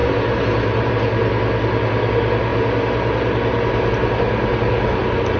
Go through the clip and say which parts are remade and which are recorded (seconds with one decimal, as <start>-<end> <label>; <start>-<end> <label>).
0.0-0.9 remade; 0.9-5.4 recorded